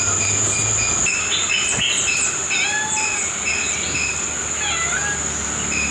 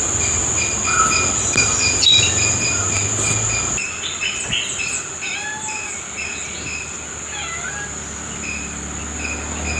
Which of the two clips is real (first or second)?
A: first